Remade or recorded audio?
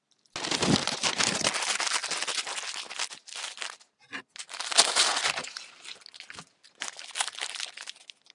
recorded